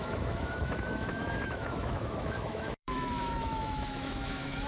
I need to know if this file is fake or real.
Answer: fake